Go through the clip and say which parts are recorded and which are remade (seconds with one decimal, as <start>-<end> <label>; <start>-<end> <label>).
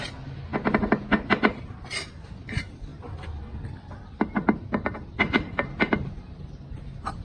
0.0-2.9 recorded; 2.9-3.6 remade; 3.6-7.2 recorded